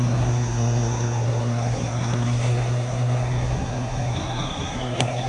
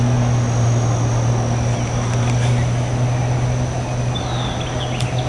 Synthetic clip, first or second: first